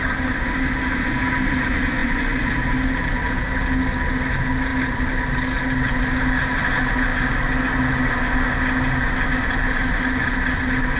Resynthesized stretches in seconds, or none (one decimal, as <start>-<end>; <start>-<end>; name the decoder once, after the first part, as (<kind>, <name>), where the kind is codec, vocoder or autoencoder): 2.0-2.5 (vocoder, Vocos)